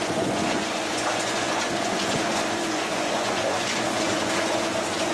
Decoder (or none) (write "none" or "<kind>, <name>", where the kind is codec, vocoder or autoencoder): vocoder, Vocos